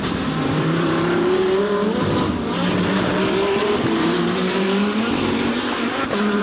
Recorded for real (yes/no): no